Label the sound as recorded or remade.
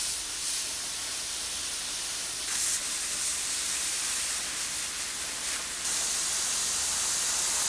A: recorded